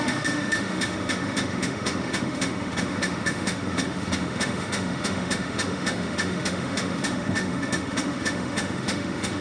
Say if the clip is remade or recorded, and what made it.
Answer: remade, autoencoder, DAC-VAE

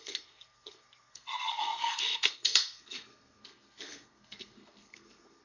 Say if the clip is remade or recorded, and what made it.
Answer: remade, codec, SNAC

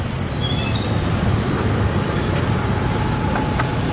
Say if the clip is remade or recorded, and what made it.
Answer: recorded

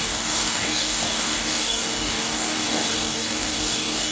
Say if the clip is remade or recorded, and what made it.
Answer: remade, codec, DAC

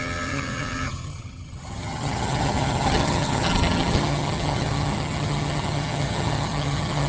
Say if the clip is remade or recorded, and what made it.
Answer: remade, vocoder, HiFi-GAN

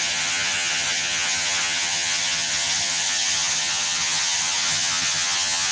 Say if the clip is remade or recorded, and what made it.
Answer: remade, vocoder, HiFi-GAN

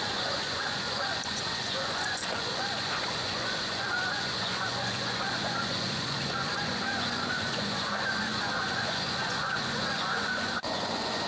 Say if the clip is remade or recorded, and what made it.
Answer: remade, vocoder, Vocos